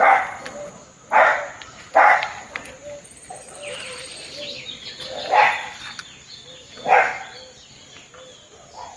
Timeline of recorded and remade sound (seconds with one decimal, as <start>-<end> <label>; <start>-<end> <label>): 0.0-1.3 recorded; 1.3-5.9 remade; 5.9-7.1 recorded; 7.1-7.7 remade; 7.7-9.0 recorded